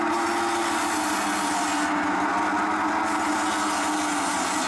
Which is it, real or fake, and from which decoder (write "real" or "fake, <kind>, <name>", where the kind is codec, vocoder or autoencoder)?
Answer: real